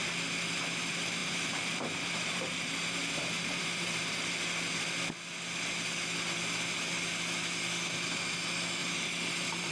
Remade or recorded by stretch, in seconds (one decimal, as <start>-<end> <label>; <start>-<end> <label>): 0.0-1.2 recorded; 1.2-4.4 remade; 4.4-8.8 recorded; 8.8-9.7 remade